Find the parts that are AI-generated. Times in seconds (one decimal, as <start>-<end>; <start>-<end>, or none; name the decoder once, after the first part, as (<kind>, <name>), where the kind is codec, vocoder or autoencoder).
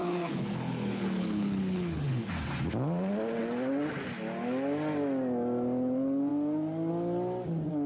0.0-2.3 (codec, HILCodec)